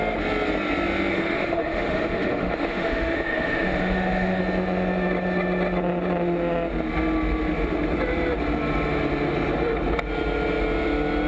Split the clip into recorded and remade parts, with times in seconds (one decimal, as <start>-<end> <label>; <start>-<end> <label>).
0.0-1.1 recorded; 1.1-4.4 remade; 4.4-11.3 recorded